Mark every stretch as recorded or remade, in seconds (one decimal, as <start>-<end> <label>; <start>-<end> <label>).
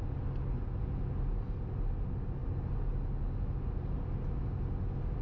0.0-5.2 recorded